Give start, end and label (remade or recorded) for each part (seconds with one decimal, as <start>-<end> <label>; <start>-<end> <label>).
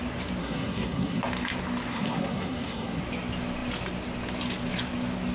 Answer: 0.0-0.4 recorded; 0.4-1.2 remade; 1.2-1.9 recorded; 1.9-3.0 remade; 3.0-5.3 recorded